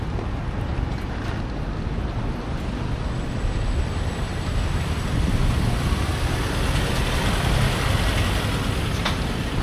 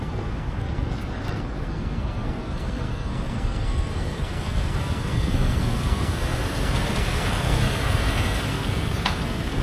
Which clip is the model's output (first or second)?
second